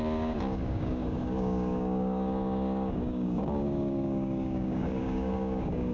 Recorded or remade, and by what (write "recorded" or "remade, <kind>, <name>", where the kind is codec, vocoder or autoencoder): remade, codec, DAC